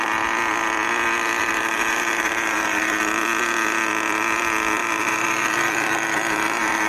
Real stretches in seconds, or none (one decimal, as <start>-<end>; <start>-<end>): 0.0-1.4; 3.0-4.8